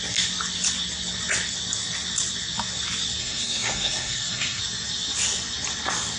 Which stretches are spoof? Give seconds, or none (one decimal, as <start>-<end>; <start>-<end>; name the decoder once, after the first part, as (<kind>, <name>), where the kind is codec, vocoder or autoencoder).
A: 3.2-4.6 (codec, SNAC)

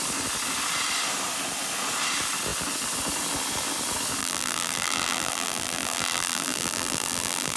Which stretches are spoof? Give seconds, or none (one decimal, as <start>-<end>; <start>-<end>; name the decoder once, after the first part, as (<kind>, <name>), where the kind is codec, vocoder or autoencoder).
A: 4.2-7.6 (vocoder, BigVGAN v2)

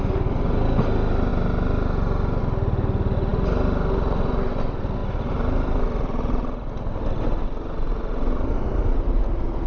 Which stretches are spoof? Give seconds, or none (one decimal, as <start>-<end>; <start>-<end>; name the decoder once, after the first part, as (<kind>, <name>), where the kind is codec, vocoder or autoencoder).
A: none